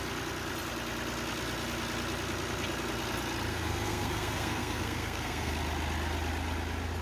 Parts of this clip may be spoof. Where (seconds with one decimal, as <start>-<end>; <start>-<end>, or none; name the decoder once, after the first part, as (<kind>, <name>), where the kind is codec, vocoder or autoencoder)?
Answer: 3.5-5.5 (codec, SNAC)